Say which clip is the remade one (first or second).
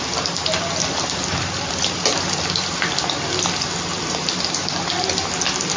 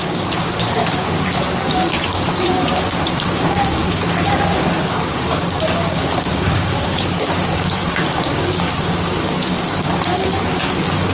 second